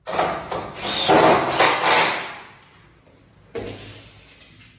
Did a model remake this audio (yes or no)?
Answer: no